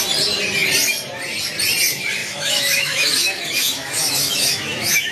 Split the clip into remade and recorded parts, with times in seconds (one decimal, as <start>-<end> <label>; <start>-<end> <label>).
0.0-2.2 recorded; 2.2-5.1 remade